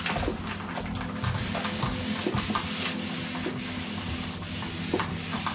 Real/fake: real